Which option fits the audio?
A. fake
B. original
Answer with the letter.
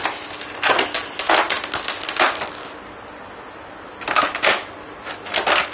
B